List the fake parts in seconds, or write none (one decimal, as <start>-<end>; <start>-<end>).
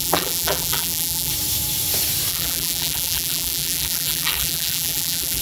0.0-1.3; 2.3-5.4